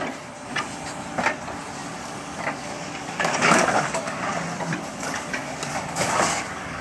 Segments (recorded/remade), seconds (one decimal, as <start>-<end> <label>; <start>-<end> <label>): 0.0-1.8 recorded; 1.8-4.3 remade; 4.3-4.9 recorded; 4.9-6.8 remade

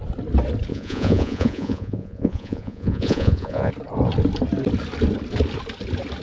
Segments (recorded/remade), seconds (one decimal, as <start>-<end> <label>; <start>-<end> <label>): 0.0-0.7 recorded; 0.7-3.7 remade; 3.7-6.2 recorded

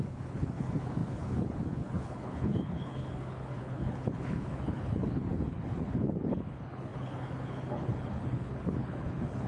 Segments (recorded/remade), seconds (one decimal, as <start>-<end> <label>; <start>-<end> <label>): 0.0-9.5 remade

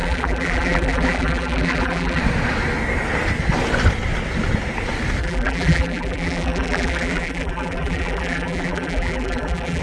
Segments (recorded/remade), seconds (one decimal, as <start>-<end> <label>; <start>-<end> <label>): 0.0-2.2 remade; 2.2-5.2 recorded; 5.2-9.8 remade